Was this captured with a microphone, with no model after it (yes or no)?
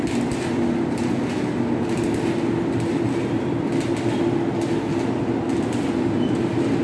yes